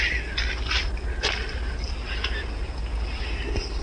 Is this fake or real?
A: real